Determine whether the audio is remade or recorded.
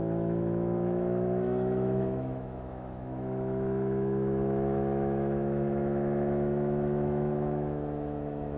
remade